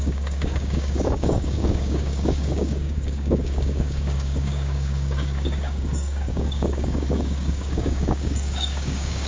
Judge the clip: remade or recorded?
remade